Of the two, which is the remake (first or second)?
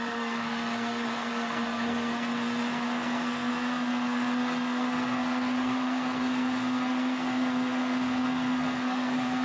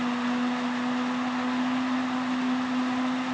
first